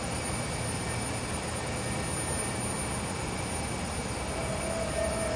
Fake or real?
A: real